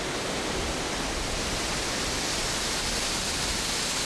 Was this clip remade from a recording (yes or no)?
no